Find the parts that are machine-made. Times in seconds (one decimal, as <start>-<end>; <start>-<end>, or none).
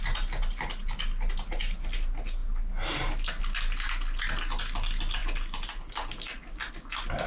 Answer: none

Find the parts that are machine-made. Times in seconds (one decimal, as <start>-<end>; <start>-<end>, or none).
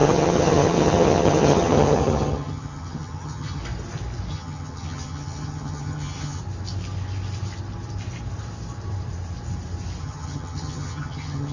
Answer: 0.0-3.6; 4.3-6.4; 10.0-11.5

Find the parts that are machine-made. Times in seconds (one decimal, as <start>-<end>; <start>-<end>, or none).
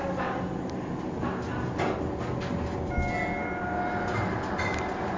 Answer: none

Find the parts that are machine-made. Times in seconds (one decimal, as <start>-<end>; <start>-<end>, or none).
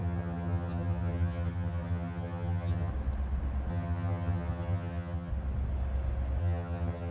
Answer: 0.0-2.9; 3.7-5.3; 6.4-7.1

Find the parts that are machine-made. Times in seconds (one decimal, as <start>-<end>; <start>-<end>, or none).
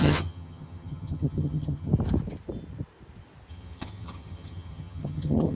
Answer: 0.0-1.9; 3.5-5.5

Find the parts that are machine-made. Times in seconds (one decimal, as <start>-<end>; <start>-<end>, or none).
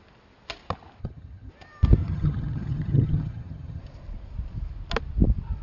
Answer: 1.0-1.5; 2.0-3.8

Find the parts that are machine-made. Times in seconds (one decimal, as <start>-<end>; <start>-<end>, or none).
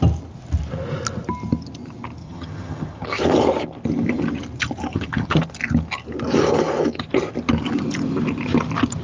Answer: 2.2-3.2; 4.9-5.4